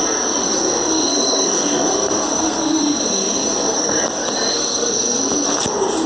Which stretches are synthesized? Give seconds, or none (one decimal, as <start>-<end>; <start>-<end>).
0.4-4.0; 4.5-5.2